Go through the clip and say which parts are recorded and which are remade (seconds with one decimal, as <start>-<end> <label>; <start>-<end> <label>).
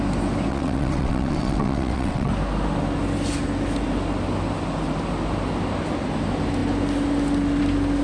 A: 0.0-0.5 recorded; 0.5-2.3 remade; 2.3-8.0 recorded